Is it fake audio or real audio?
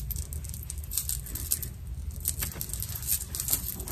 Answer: real